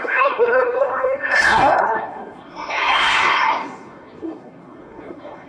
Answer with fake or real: fake